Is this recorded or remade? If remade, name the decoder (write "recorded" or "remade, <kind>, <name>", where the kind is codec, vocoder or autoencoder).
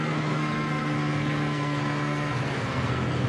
remade, codec, SNAC